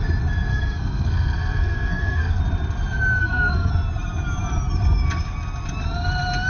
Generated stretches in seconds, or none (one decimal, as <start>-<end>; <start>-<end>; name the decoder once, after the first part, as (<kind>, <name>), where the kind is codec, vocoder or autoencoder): 0.5-2.4 (codec, SNAC); 3.2-3.7